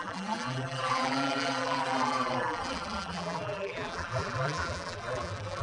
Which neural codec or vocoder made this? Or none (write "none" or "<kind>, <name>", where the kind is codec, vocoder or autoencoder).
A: vocoder, BigVGAN v2